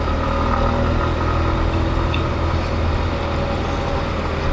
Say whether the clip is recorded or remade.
recorded